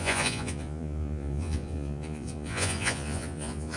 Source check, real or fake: fake